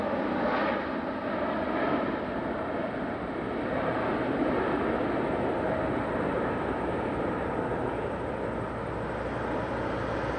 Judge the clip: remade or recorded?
recorded